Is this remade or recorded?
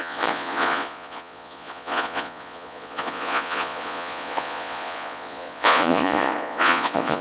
remade